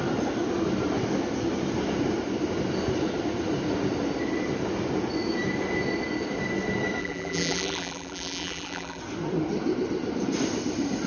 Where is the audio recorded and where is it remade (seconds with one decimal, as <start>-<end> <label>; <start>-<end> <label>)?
0.0-7.0 recorded; 7.0-9.0 remade; 9.0-11.1 recorded